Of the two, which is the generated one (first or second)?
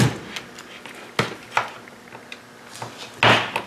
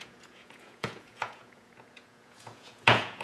second